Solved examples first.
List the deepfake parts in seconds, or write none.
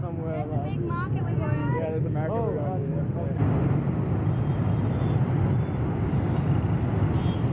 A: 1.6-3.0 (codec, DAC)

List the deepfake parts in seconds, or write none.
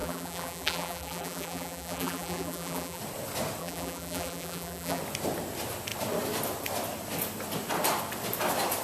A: 0.0-3.0 (vocoder, BigVGAN v2); 3.6-5.0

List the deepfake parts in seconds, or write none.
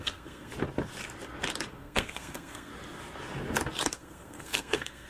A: 0.0-0.5 (codec, SNAC); 1.7-2.7; 3.9-5.1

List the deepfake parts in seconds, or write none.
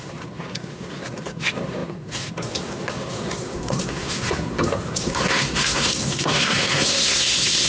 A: 0.0-7.7 (codec, SNAC)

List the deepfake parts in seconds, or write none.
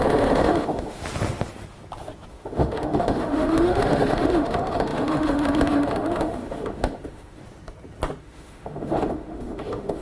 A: 0.0-1.0 (autoencoder, DAC-VAE); 2.3-7.4; 8.2-10.0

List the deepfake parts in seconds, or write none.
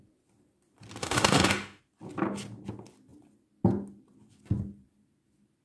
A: 1.0-1.8 (autoencoder, DAC-VAE)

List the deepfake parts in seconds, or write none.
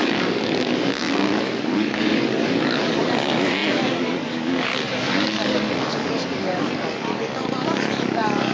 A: 0.0-8.5 (codec, DAC)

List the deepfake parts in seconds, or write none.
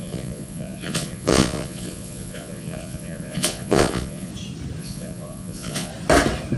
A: 0.0-4.3 (vocoder, Vocos); 4.8-5.9